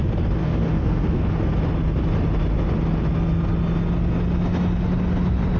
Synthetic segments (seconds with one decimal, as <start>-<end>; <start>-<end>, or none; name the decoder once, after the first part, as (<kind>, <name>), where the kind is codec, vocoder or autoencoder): 0.4-1.3 (codec, SNAC)